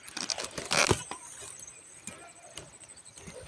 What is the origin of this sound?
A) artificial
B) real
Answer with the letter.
B